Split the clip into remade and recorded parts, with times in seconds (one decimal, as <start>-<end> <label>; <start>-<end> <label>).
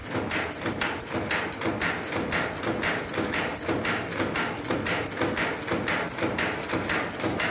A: 0.0-7.5 recorded